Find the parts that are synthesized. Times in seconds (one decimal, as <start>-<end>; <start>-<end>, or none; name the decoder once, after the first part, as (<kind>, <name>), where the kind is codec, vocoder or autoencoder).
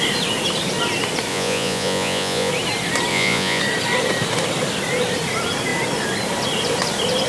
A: 1.3-2.5 (vocoder, Vocos); 3.1-3.6